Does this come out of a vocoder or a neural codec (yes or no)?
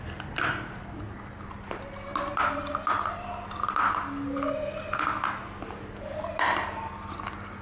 no